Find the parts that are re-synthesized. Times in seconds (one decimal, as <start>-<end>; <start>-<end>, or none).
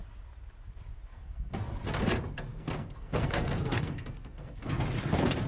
1.1-1.7; 2.5-4.7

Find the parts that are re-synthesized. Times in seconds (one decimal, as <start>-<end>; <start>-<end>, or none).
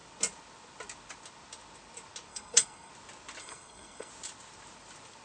2.3-2.9; 3.4-4.1